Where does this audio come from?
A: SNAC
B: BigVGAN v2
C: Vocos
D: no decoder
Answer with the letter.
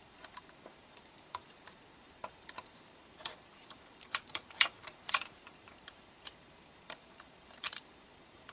B